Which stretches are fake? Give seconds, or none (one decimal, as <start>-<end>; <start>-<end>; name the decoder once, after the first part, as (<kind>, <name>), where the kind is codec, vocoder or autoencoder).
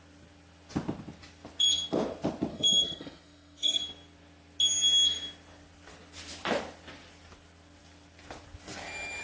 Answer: 2.5-3.8 (codec, SNAC)